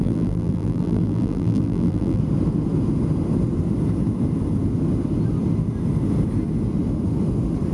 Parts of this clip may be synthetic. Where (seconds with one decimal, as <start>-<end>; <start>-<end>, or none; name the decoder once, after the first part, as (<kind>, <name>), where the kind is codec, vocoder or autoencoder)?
0.0-2.2 (vocoder, BigVGAN v2)